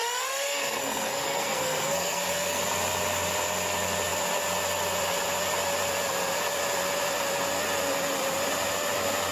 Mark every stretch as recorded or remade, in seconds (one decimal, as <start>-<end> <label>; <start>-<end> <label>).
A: 0.0-2.6 remade; 2.6-9.3 recorded